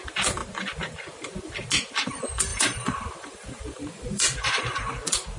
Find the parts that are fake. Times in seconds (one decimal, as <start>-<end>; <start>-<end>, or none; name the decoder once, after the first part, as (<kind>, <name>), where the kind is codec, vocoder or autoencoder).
2.5-4.6 (vocoder, BigVGAN v2)